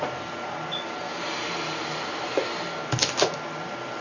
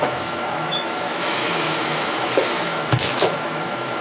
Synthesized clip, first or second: second